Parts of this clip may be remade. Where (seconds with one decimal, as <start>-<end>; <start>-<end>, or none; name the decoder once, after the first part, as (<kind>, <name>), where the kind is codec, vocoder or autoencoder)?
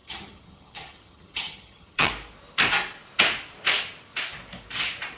0.0-2.1 (vocoder, HiFi-GAN)